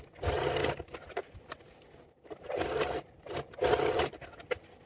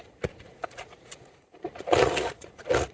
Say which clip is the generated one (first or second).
second